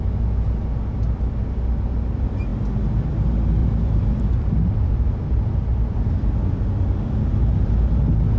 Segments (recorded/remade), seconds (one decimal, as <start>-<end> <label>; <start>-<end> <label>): 0.0-3.6 recorded; 3.6-4.9 remade; 4.9-8.4 recorded